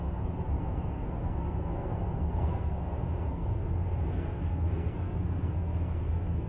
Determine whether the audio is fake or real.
fake